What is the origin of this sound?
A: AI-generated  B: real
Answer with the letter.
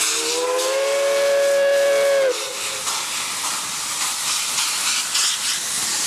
B